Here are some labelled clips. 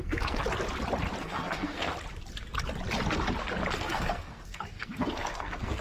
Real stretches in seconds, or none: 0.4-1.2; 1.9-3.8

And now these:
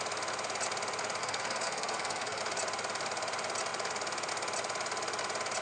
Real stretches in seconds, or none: 0.0-1.2; 2.4-5.6

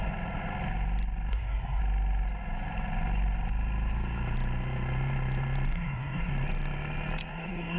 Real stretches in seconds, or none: 0.0-1.3; 1.8-5.7; 6.3-7.3

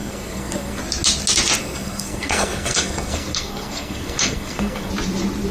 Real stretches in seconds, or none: 0.8-1.6; 4.9-5.5